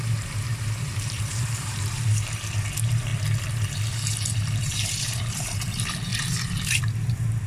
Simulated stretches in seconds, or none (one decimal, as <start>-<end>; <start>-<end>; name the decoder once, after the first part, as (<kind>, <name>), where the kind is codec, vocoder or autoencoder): 0.0-3.1 (vocoder, BigVGAN v2); 3.9-7.5